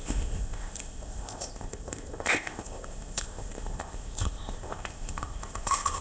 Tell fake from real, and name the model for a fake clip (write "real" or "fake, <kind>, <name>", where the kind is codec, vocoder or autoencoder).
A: fake, codec, ZipCodec